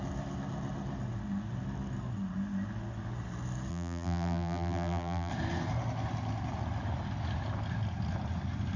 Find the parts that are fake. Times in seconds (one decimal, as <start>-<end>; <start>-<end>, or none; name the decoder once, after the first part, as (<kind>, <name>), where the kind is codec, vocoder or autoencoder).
3.7-5.3 (vocoder, BigVGAN v2)